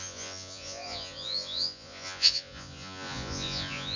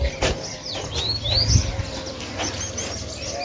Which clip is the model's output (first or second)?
first